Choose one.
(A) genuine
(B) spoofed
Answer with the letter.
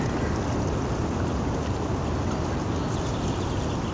A